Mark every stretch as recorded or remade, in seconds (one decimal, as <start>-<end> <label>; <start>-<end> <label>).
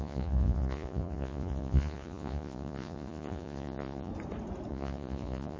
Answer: 0.0-4.1 remade; 4.1-4.7 recorded; 4.7-5.6 remade